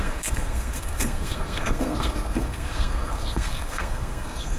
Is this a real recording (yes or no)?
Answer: no